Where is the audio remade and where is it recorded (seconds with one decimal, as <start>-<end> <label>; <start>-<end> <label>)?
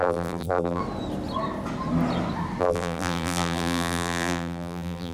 0.0-0.8 remade; 0.8-2.6 recorded; 2.6-5.1 remade